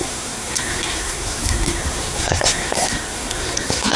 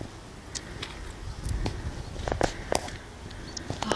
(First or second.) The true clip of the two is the second